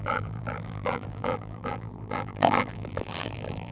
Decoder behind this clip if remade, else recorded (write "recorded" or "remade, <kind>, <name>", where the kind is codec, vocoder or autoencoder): remade, vocoder, BigVGAN v2